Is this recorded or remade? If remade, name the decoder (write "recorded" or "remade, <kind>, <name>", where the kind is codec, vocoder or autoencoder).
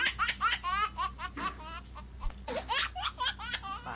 recorded